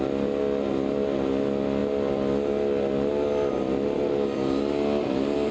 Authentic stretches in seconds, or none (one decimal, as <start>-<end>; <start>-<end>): 0.0-5.5